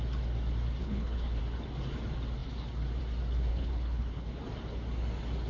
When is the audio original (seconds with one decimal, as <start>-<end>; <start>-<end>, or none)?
0.0-0.8; 1.4-3.5; 4.4-5.5

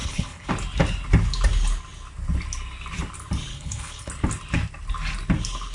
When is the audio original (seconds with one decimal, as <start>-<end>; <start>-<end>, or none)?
0.5-3.5; 4.1-5.7